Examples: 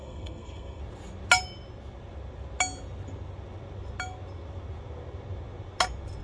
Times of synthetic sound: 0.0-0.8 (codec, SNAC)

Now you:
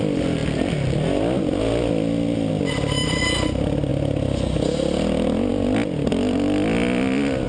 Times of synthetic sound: none

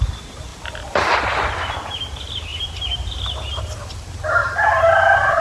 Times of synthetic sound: 2.5-3.5 (vocoder, BigVGAN v2); 4.4-5.4